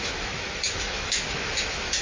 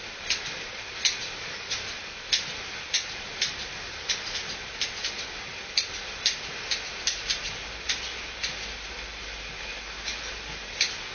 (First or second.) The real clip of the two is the second